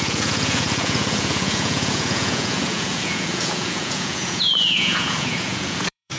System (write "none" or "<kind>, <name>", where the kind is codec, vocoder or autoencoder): vocoder, Vocos